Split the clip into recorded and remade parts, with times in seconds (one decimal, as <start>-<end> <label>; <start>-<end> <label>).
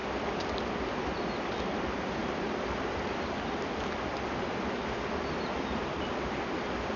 0.0-7.0 recorded